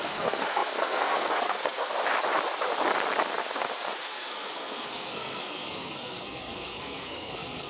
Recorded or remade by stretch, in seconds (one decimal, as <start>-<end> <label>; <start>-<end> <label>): 0.0-1.9 remade; 1.9-4.0 recorded; 4.0-7.7 remade